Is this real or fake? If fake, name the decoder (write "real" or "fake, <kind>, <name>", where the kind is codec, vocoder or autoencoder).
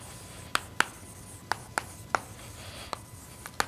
real